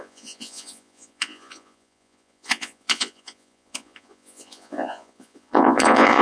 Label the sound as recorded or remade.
remade